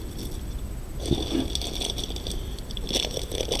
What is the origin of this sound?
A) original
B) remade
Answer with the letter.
A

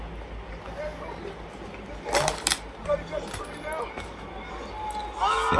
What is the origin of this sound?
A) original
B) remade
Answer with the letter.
A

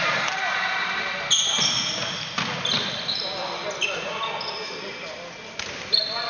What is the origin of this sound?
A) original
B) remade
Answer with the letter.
A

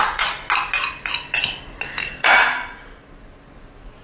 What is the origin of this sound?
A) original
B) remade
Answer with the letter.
A